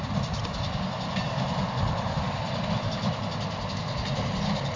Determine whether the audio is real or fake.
real